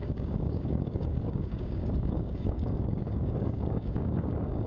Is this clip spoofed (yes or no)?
yes